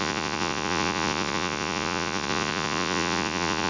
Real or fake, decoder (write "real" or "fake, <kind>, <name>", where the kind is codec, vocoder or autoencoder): fake, vocoder, Vocos